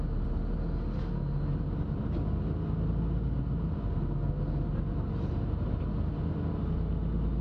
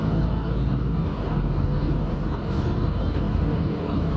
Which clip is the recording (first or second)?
first